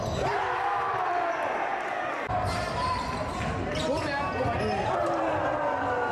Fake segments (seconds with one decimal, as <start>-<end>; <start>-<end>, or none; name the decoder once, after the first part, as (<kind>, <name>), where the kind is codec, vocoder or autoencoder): none